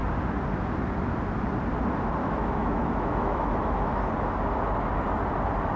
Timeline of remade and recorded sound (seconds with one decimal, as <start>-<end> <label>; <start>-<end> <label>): 0.0-2.2 recorded; 2.2-4.0 remade; 4.0-5.8 recorded